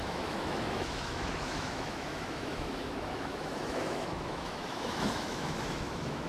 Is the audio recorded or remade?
remade